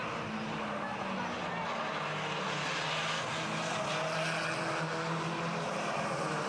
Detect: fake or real real